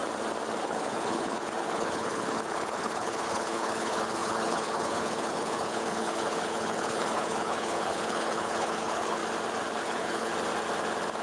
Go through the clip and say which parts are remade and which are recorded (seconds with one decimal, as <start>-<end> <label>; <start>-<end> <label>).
0.0-0.6 recorded; 0.6-9.2 remade; 9.2-9.8 recorded; 9.8-10.3 remade; 10.3-11.2 recorded